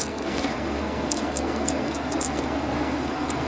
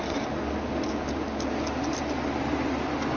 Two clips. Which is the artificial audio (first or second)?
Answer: first